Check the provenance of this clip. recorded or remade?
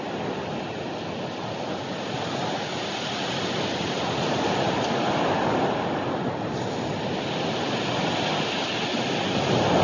recorded